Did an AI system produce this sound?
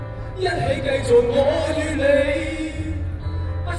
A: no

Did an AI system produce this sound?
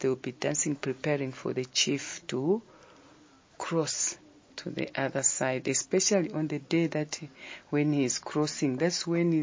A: no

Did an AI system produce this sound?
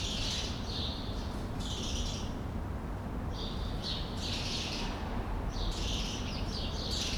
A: yes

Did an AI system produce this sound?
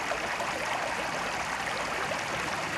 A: no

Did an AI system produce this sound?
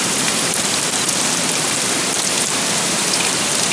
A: yes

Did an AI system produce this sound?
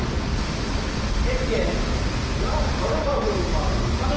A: yes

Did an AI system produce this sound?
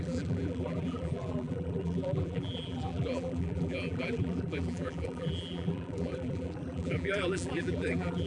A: yes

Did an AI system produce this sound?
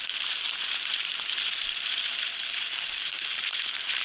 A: yes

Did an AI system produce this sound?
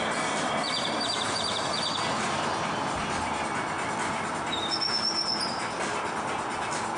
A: no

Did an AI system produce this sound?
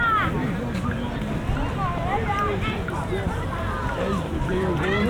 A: no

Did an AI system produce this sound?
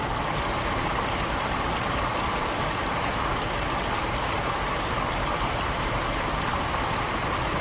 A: no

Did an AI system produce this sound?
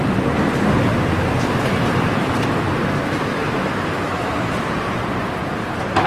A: yes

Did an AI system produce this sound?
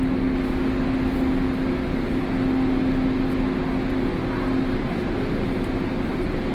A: no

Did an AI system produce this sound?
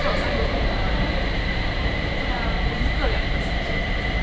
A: yes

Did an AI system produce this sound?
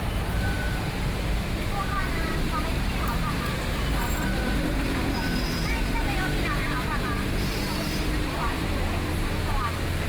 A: yes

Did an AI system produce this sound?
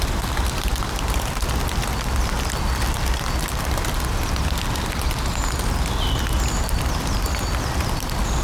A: no